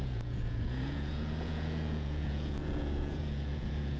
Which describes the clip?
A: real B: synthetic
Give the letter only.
B